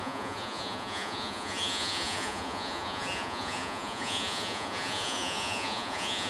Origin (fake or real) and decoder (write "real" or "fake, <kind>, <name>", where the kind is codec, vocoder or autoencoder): fake, vocoder, Vocos